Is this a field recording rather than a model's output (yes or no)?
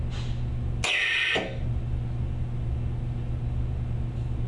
yes